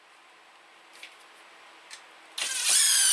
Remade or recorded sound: recorded